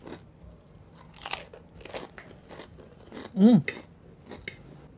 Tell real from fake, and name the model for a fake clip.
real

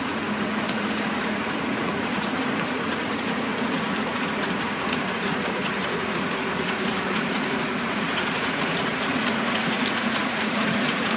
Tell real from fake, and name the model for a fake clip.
fake, vocoder, Vocos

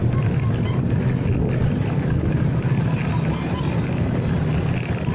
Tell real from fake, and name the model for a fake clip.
real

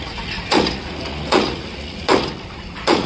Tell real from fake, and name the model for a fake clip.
fake, vocoder, Vocos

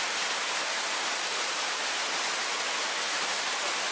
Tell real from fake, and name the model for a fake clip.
real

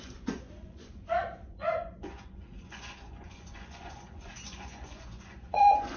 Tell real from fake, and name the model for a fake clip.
fake, vocoder, Vocos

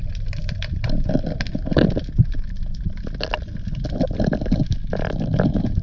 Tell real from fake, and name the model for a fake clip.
real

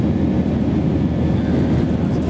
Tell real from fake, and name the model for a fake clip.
real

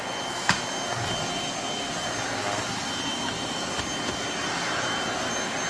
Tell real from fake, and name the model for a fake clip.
real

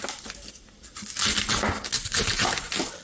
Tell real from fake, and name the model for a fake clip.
real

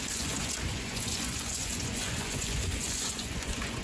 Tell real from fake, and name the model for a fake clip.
fake, vocoder, Vocos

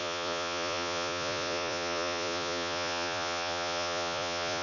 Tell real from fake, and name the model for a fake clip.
fake, vocoder, Vocos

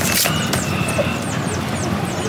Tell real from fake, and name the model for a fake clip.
real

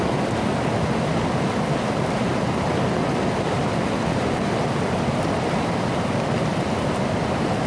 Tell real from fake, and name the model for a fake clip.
real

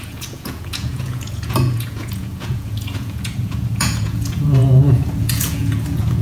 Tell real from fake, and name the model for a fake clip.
fake, vocoder, Vocos